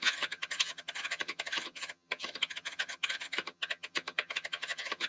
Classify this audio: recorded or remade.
remade